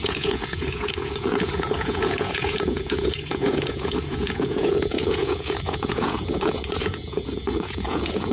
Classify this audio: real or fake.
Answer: fake